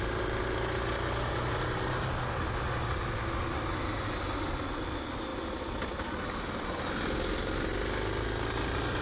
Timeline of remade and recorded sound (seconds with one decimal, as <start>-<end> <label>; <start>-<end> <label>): 0.0-9.0 recorded